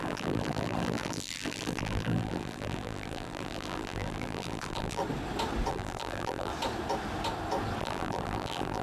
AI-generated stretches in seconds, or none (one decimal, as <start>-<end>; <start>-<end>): 0.0-5.0; 5.7-6.5; 7.8-8.8